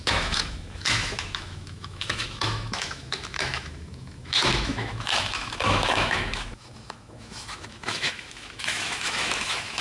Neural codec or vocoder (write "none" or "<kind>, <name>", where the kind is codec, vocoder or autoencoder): autoencoder, DAC-VAE